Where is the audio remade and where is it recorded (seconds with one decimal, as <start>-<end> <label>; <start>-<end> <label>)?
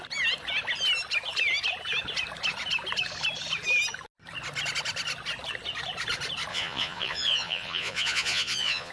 0.0-6.5 recorded; 6.5-8.9 remade